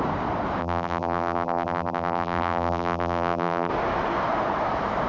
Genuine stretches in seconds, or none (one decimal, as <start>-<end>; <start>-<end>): 0.0-0.6; 3.7-5.1